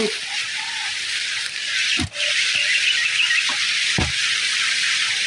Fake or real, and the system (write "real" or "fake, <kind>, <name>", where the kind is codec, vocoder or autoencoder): real